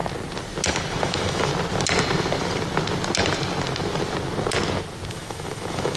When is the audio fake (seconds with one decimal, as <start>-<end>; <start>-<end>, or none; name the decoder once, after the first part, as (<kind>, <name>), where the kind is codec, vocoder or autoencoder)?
1.0-1.5 (autoencoder, DAC-VAE); 5.1-6.0